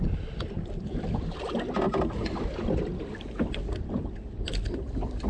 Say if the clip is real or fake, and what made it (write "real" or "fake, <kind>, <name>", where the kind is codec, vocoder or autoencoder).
real